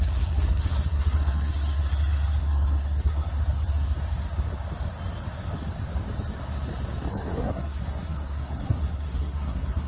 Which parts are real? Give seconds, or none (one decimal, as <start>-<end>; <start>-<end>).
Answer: 1.9-2.4; 3.3-7.1